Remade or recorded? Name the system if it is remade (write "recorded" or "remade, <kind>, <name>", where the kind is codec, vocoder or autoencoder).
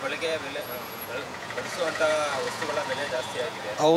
remade, vocoder, Vocos